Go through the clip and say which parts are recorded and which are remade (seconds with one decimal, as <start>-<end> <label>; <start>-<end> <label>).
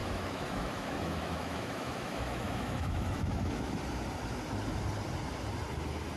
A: 0.0-3.7 remade; 3.7-6.2 recorded